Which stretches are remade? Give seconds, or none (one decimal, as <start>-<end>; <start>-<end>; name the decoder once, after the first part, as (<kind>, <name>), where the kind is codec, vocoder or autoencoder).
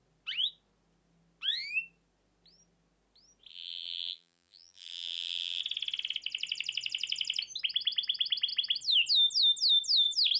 3.5-5.6 (vocoder, BigVGAN v2)